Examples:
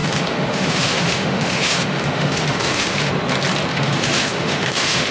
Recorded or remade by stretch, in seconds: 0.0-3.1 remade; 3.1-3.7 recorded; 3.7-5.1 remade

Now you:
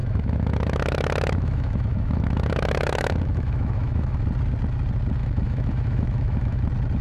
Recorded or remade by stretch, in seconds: 0.0-4.2 remade; 4.2-5.2 recorded; 5.2-6.6 remade; 6.6-7.0 recorded

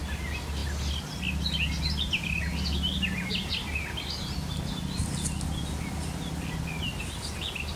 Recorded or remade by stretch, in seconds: 0.0-7.8 recorded

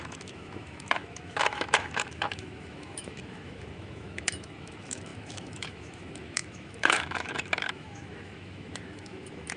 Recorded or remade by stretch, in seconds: 0.0-9.6 remade